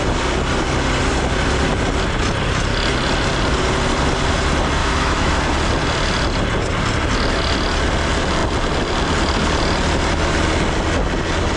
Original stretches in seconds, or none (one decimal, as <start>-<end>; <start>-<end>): 0.0-4.8; 5.4-11.6